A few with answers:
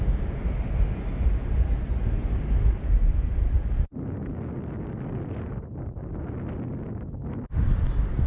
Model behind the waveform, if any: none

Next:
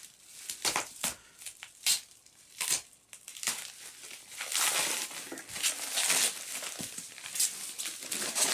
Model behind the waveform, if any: none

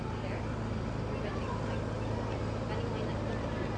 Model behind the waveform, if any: none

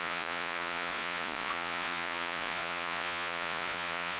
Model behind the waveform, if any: vocoder, Vocos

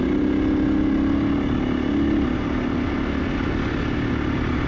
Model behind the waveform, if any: none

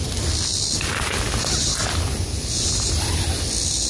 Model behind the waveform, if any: none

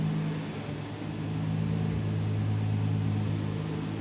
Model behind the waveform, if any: none